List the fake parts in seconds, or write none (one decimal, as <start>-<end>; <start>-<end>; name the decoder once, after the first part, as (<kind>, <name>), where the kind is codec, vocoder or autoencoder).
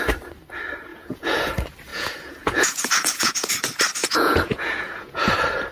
0.9-1.5 (vocoder, Vocos); 1.9-3.5; 4.0-5.3